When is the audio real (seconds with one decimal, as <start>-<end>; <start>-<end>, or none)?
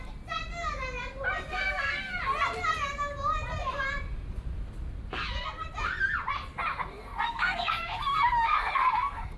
0.0-1.5; 2.2-6.9